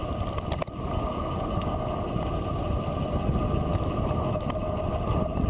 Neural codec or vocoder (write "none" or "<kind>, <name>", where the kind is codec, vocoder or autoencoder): none